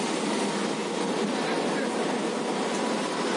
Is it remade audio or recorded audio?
recorded